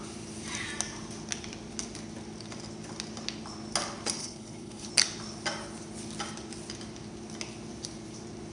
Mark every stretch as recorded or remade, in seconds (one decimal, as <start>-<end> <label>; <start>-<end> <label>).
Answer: 0.0-4.2 recorded; 4.2-4.9 remade; 4.9-8.5 recorded